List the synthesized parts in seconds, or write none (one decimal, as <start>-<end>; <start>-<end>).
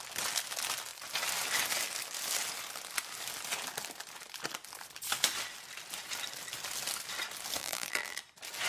7.6-8.2